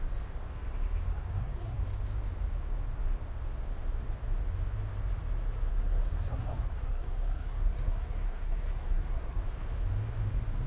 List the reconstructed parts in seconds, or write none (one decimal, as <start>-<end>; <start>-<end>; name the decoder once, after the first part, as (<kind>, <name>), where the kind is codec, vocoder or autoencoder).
1.1-1.8 (codec, SNAC); 5.7-9.4